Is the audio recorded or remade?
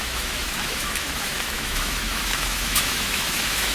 remade